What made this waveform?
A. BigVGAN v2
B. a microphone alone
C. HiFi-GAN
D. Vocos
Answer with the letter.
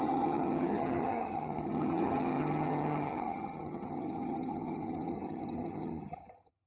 C